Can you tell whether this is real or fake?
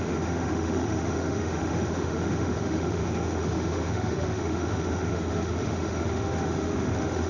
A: fake